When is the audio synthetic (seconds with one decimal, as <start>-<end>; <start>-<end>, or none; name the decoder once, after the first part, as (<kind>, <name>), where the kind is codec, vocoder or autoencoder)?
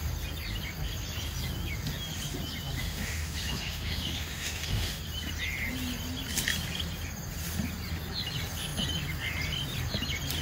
2.8-5.0 (autoencoder, DAC-VAE)